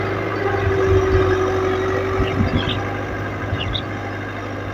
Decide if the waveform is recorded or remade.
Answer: recorded